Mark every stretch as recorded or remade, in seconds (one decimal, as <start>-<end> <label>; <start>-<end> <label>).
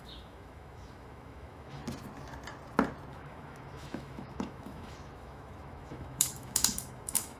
0.0-1.8 remade; 1.8-3.1 recorded; 3.1-7.4 remade